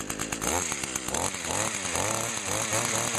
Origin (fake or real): real